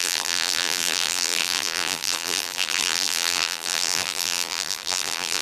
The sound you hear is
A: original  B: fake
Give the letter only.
B